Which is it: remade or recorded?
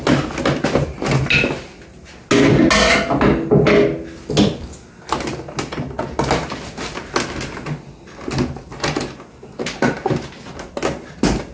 recorded